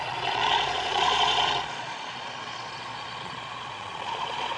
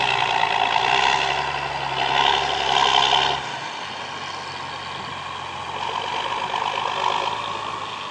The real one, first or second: second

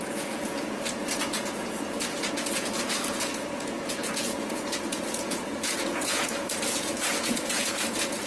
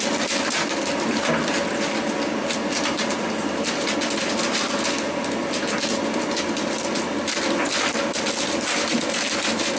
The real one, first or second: second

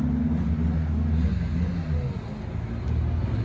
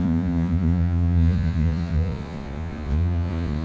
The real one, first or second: first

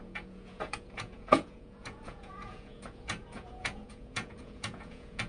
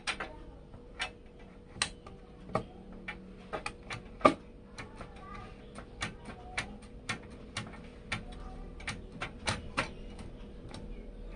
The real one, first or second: second